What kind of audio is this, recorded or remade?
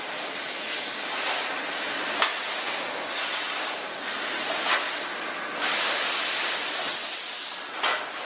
recorded